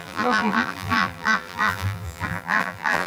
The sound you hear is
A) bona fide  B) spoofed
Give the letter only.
B